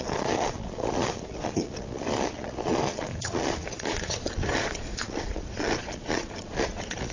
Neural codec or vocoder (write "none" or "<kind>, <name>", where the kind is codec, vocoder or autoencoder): vocoder, Vocos